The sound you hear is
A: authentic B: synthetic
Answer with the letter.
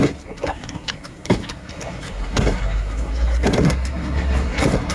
B